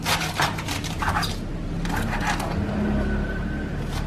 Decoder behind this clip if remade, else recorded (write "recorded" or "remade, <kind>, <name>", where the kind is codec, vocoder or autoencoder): recorded